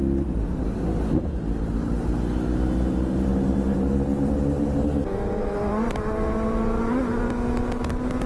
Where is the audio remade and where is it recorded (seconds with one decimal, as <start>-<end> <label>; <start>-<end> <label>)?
0.0-3.3 recorded; 3.3-7.2 remade; 7.2-8.3 recorded